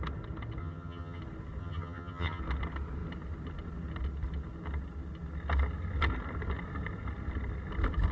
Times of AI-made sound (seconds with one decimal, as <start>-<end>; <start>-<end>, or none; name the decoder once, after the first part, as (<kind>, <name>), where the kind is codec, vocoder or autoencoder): 0.6-1.2 (vocoder, HiFi-GAN); 1.6-2.4